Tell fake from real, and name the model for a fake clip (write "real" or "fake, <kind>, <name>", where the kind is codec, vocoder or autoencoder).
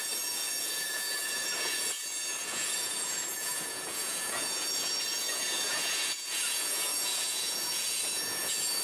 fake, vocoder, Vocos